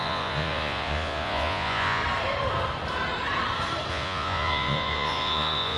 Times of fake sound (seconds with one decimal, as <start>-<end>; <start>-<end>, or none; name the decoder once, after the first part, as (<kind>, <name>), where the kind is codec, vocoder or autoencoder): 0.0-2.0 (vocoder, Vocos); 3.9-5.8

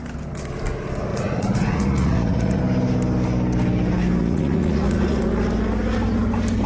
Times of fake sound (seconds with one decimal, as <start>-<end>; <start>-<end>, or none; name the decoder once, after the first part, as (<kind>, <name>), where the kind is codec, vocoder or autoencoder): 1.1-2.6 (vocoder, Vocos); 4.2-5.2

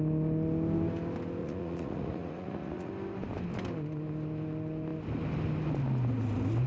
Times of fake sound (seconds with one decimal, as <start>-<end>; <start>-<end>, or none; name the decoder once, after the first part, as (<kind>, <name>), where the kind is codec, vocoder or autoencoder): 1.4-2.9 (vocoder, Vocos)

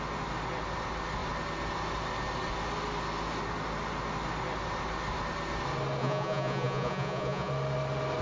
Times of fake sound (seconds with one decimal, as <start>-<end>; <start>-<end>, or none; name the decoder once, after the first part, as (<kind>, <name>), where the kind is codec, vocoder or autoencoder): 6.0-7.5 (vocoder, Vocos)

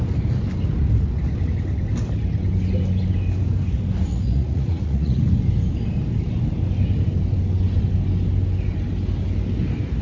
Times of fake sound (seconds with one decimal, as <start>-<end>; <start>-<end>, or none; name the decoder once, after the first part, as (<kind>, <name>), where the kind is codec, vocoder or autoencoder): 4.1-5.2 (vocoder, Vocos)

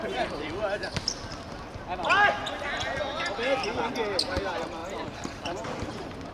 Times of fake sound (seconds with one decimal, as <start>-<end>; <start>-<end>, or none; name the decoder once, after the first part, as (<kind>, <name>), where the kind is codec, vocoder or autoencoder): none